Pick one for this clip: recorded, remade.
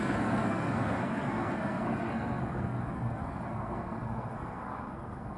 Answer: remade